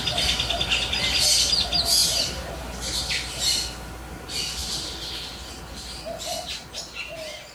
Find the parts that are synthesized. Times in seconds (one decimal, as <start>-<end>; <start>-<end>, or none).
none